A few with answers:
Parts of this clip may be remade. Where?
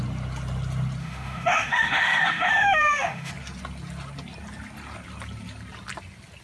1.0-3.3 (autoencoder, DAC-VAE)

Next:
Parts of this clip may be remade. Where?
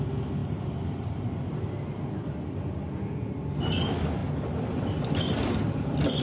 0.4-1.3 (vocoder, BigVGAN v2)